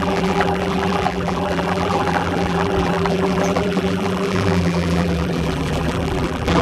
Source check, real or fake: fake